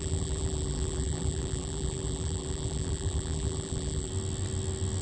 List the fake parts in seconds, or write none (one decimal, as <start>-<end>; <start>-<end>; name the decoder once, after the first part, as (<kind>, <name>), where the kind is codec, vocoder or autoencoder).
0.0-4.1 (vocoder, BigVGAN v2)